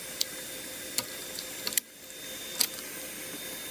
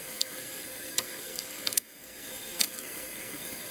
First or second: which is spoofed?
second